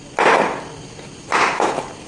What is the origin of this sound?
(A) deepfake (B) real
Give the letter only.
B